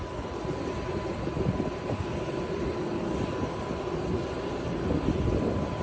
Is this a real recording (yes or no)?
yes